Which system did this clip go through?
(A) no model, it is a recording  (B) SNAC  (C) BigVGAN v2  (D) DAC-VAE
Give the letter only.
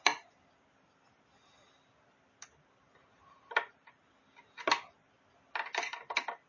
A